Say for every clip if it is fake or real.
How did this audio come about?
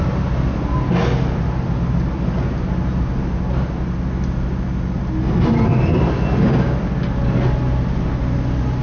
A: real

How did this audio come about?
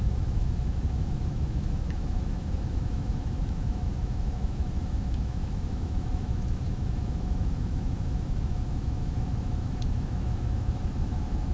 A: fake